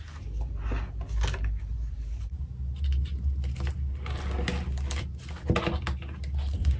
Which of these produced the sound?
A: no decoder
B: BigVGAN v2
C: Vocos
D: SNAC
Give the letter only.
A